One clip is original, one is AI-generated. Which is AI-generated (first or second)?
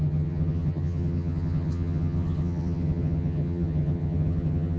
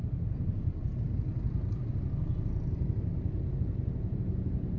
first